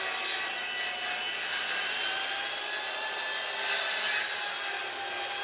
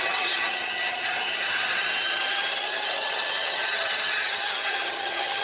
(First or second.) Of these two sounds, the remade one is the second